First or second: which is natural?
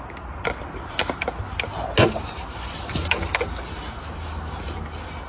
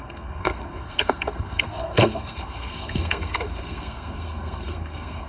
first